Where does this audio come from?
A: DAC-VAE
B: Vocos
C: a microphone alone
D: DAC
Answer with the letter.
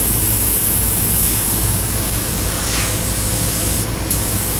D